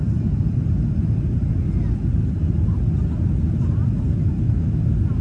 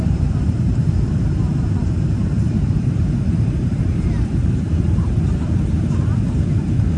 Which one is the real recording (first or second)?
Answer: first